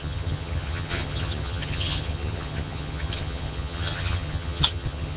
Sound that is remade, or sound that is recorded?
remade